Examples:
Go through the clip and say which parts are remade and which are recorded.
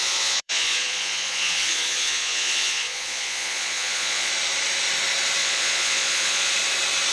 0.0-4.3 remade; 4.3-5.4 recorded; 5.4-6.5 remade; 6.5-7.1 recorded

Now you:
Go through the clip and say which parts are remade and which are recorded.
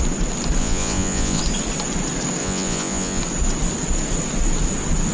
0.0-0.6 recorded; 0.6-1.4 remade; 1.4-2.4 recorded; 2.4-3.2 remade; 3.2-5.1 recorded